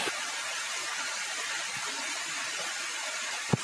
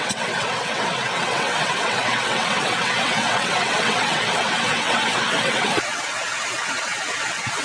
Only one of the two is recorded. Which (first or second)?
first